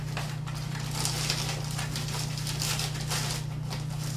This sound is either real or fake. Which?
real